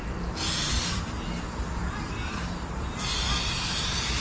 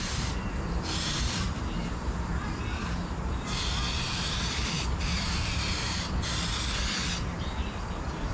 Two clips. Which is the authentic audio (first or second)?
first